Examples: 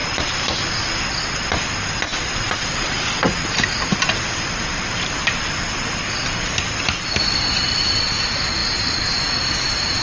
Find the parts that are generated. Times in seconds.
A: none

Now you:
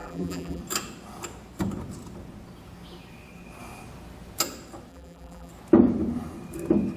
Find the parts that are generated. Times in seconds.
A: 0.0-0.6 (vocoder, BigVGAN v2); 4.9-5.5

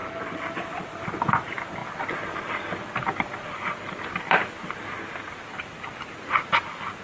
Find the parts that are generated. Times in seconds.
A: 0.0-1.0 (vocoder, BigVGAN v2); 1.8-6.0

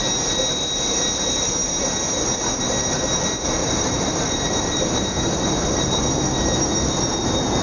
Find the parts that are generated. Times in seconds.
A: 3.6-6.0 (vocoder, BigVGAN v2)

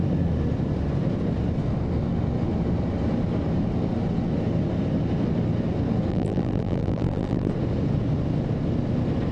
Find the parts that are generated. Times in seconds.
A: 6.1-7.5 (vocoder, BigVGAN v2)